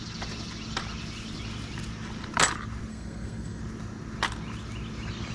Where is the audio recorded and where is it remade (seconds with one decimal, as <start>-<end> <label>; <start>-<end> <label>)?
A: 0.0-2.9 recorded; 2.9-3.6 remade; 3.6-5.3 recorded